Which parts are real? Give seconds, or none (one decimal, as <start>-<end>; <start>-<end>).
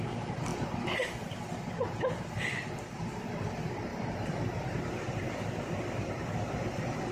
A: 0.0-7.1